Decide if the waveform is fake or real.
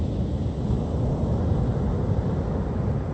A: real